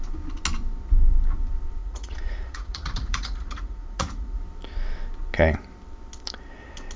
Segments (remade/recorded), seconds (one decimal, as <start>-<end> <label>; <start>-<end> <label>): 0.0-1.8 recorded; 1.8-4.4 remade; 4.4-7.0 recorded